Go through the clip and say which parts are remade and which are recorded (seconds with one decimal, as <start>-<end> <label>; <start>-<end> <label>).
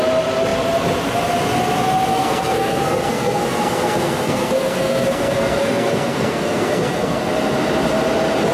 0.0-2.1 recorded; 2.1-7.2 remade; 7.2-8.5 recorded